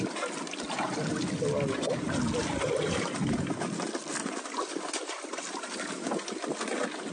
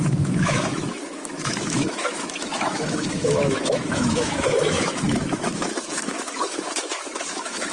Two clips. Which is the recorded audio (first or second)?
first